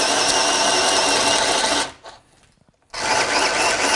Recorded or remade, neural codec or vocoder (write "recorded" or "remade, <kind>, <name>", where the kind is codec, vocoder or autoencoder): recorded